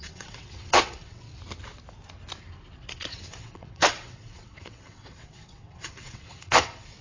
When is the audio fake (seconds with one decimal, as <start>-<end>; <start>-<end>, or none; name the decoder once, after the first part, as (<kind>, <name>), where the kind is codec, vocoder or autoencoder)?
0.0-1.3 (vocoder, WaveNeXt); 2.9-7.0